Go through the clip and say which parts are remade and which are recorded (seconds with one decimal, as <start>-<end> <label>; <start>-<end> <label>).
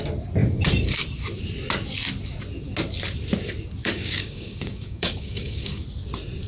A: 0.0-3.8 recorded; 3.8-5.8 remade; 5.8-6.5 recorded